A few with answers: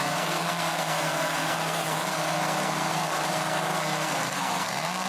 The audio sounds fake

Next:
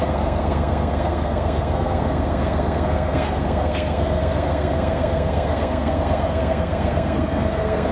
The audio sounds fake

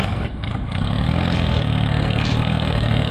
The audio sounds fake